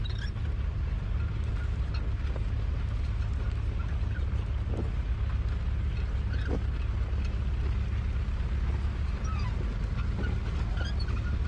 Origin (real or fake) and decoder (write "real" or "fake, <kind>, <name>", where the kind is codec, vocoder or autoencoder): real